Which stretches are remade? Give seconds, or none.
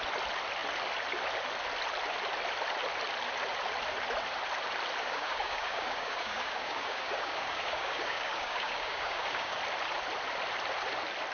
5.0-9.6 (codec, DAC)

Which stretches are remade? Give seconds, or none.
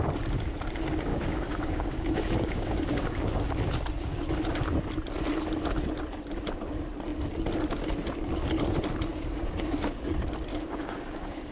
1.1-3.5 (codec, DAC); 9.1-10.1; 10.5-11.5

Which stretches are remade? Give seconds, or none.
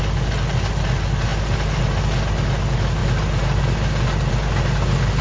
none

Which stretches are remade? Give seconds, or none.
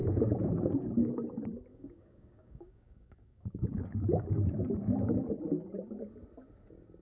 0.0-1.1 (codec, DAC); 1.7-5.4